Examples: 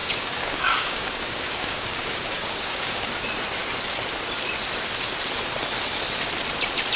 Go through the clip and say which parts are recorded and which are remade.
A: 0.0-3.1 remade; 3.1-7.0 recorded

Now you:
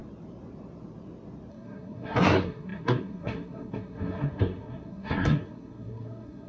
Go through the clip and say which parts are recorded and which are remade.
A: 0.0-1.5 recorded; 1.5-6.5 remade

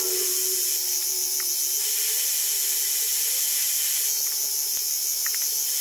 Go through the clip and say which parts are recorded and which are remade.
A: 0.0-5.8 recorded

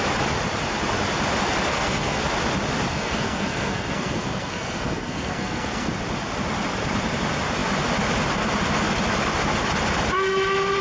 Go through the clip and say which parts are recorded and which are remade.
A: 0.0-1.7 recorded; 1.7-2.2 remade; 2.2-2.9 recorded; 2.9-5.9 remade; 5.9-10.8 recorded

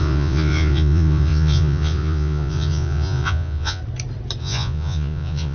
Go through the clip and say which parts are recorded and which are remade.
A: 0.0-3.8 remade; 3.8-4.4 recorded; 4.4-5.5 remade

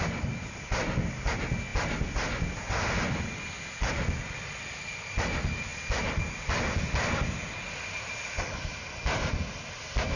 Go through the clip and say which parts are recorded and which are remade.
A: 0.0-10.2 recorded

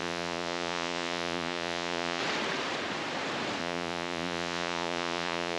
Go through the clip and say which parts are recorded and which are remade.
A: 0.0-2.2 remade; 2.2-3.6 recorded; 3.6-5.6 remade

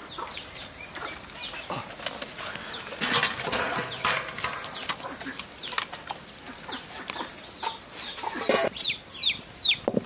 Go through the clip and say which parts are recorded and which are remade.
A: 0.0-10.1 recorded